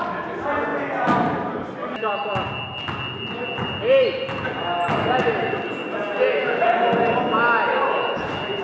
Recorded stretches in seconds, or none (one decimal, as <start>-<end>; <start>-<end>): 0.0-8.6